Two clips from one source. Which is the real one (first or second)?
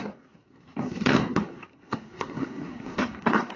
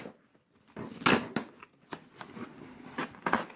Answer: second